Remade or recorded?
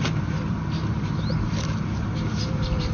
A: remade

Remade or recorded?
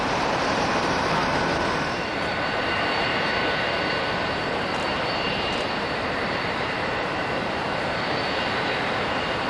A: remade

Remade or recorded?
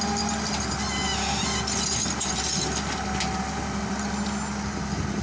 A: recorded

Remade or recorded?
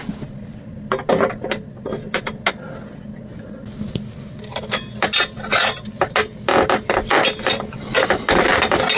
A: recorded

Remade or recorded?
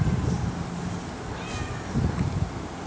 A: recorded